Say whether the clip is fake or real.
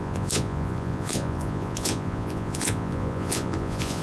fake